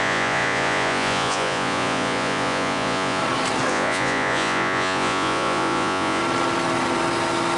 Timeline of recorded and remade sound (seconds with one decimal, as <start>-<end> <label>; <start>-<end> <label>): 0.0-3.2 remade; 3.2-3.7 recorded; 3.7-6.2 remade; 6.2-7.6 recorded